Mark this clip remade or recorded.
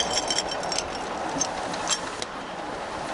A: recorded